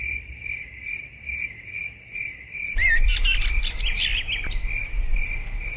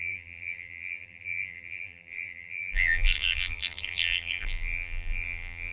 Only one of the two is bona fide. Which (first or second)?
first